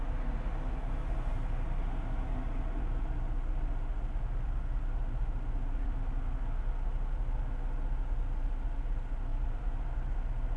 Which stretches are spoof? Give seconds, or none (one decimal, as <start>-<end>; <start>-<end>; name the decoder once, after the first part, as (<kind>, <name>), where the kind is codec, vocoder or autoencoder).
9.3-9.8 (vocoder, BigVGAN v2)

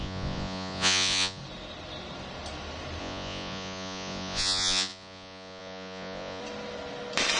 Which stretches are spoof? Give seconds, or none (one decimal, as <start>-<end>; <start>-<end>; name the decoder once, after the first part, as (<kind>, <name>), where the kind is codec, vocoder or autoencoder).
0.0-1.4 (vocoder, Vocos); 3.0-6.4

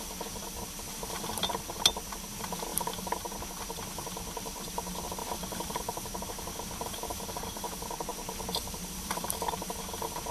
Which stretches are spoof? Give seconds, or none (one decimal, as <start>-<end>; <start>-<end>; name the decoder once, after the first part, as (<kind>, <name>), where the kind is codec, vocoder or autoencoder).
none